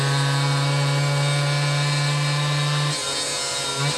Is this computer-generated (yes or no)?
no